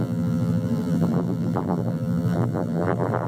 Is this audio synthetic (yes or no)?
yes